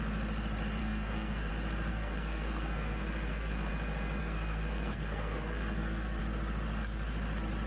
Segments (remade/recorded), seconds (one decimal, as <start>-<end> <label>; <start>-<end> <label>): 0.0-0.8 recorded; 0.8-1.5 remade; 1.5-1.9 recorded; 1.9-3.7 remade; 3.7-4.2 recorded; 4.2-6.2 remade; 6.2-7.7 recorded